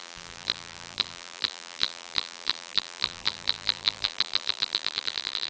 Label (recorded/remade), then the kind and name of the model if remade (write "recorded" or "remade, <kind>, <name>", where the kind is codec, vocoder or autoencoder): remade, vocoder, BigVGAN v2